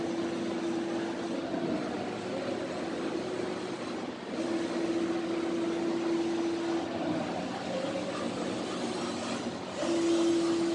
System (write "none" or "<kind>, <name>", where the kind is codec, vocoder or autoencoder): none